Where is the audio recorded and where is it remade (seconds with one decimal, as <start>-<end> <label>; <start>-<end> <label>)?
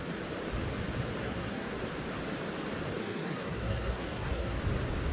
0.0-1.2 recorded; 1.2-1.8 remade; 1.8-3.0 recorded; 3.0-4.6 remade; 4.6-5.1 recorded